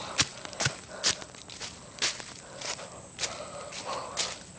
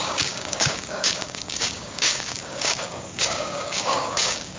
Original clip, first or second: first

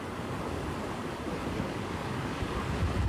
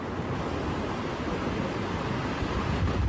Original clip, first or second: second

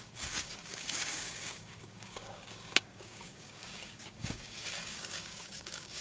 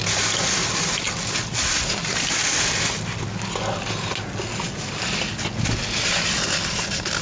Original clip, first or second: second